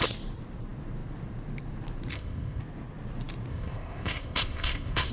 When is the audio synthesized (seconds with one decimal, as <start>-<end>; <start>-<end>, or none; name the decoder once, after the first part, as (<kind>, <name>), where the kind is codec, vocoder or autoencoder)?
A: 2.1-2.6 (codec, ZipCodec); 3.5-5.1